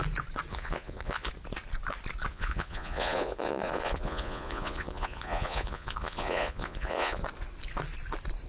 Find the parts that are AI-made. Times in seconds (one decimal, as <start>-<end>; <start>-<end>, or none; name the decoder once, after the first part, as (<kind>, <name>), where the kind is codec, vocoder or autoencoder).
0.5-1.3 (vocoder, Vocos); 2.3-7.2

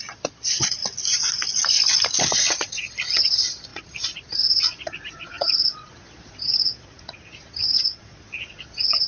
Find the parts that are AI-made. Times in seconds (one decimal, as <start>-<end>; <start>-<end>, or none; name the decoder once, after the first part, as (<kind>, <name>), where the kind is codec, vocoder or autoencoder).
0.0-0.8 (vocoder, Vocos); 2.2-9.1

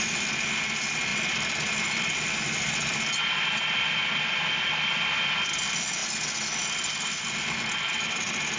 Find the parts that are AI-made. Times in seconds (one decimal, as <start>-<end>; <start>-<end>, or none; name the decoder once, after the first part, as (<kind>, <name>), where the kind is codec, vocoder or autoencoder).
0.0-6.0 (vocoder, BigVGAN v2); 6.7-8.6

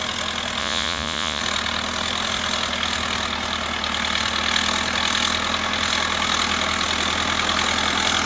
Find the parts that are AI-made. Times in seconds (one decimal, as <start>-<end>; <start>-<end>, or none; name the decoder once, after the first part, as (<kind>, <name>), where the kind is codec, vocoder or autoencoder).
0.6-1.4 (vocoder, Vocos)

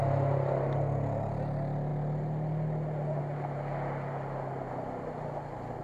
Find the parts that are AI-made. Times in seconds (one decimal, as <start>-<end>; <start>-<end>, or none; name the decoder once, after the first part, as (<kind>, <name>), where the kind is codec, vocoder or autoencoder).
none

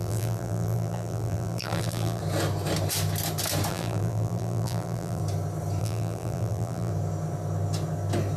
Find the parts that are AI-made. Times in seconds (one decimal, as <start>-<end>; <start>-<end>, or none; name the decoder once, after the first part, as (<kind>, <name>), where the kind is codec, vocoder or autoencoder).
0.0-2.2 (vocoder, BigVGAN v2); 3.7-5.2; 5.8-6.9

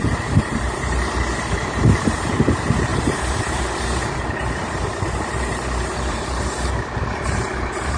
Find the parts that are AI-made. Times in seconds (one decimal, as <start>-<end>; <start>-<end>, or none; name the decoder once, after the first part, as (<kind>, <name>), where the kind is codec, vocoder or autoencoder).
0.0-8.0 (vocoder, BigVGAN v2)

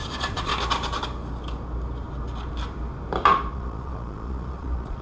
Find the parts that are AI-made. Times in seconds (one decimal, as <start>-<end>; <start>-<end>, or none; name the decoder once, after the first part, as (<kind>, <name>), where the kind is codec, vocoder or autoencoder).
0.0-0.5 (vocoder, Vocos); 3.5-5.0